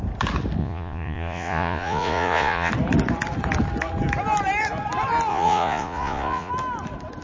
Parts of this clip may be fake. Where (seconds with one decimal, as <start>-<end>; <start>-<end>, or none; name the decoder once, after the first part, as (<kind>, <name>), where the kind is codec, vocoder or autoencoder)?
0.6-2.7 (vocoder, Vocos); 5.3-6.5